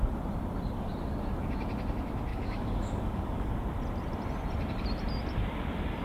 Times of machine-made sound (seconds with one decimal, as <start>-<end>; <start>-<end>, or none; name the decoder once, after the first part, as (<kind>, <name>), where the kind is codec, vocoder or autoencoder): 2.3-3.5 (codec, DAC)